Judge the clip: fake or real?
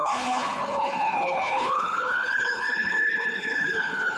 fake